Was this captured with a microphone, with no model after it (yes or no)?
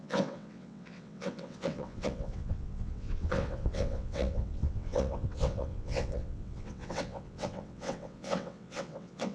no